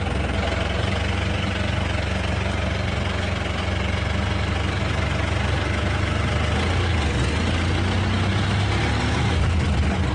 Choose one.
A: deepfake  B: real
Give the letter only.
B